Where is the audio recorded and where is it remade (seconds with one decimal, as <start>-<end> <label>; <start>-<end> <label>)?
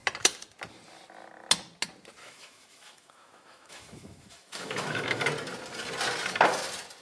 0.0-2.2 recorded; 2.2-5.2 remade; 5.2-7.0 recorded